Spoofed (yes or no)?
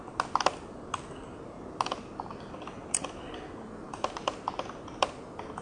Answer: no